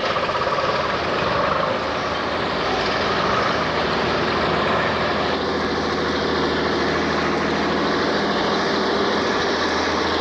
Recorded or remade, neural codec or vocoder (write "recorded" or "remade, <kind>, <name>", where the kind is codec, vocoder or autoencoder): recorded